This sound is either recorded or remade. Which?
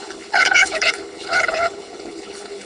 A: remade